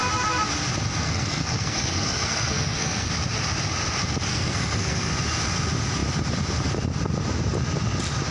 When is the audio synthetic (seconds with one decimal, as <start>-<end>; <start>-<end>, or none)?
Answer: 1.0-3.1; 4.3-5.1